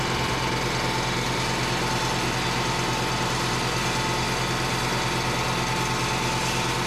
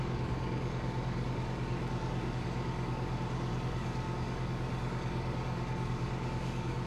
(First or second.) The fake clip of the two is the second